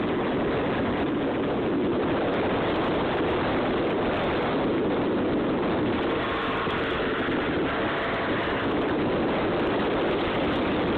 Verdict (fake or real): real